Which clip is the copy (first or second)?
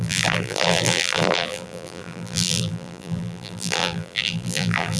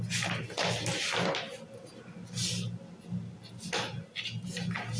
first